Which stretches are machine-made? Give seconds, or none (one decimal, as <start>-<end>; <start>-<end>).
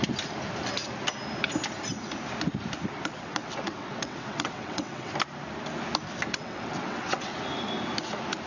3.2-5.1; 6.3-7.3